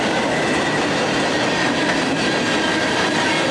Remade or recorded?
recorded